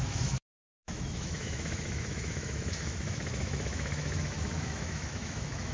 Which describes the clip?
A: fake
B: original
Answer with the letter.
A